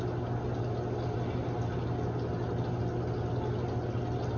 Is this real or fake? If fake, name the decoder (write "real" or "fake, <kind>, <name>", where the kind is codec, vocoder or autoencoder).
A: real